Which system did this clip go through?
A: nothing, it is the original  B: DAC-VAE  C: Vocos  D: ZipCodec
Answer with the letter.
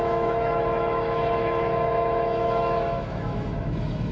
B